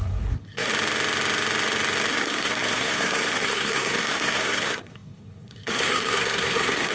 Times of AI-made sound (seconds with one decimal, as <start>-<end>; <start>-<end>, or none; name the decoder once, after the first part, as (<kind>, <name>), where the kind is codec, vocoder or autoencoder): 0.0-0.7 (codec, SNAC); 2.1-6.9